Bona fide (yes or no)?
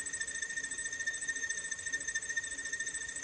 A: no